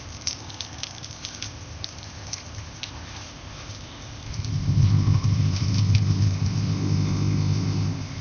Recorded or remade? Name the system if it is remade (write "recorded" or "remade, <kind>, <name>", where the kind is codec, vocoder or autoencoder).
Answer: remade, codec, ZipCodec